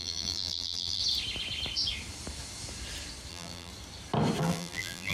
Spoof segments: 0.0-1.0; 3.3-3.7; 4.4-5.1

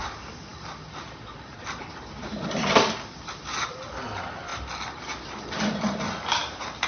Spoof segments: none

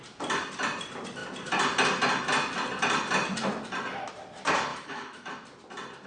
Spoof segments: 4.7-5.3

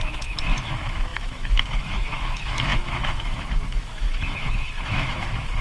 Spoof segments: 0.0-5.6

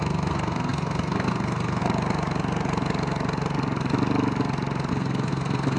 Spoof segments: 0.0-1.8; 4.9-5.8

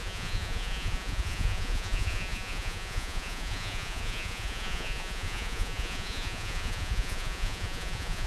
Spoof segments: 0.0-8.3

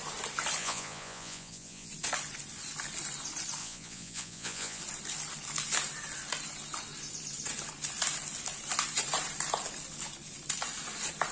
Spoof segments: 0.6-1.9; 3.6-4.8